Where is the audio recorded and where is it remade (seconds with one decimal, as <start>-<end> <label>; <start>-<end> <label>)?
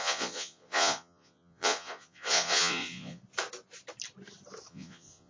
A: 0.0-3.2 remade; 3.2-4.7 recorded; 4.7-5.3 remade